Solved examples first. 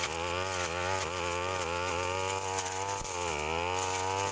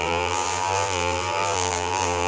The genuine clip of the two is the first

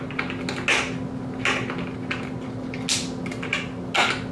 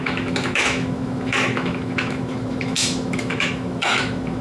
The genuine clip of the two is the first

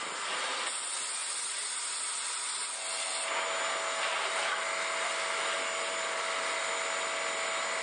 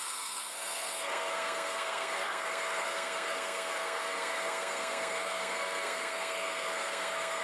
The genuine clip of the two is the first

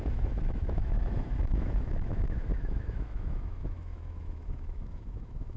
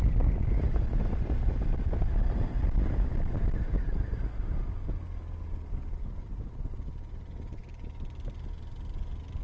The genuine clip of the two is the second